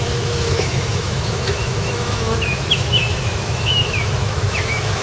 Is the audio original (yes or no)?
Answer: no